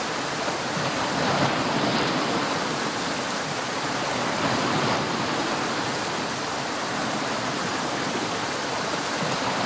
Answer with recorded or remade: recorded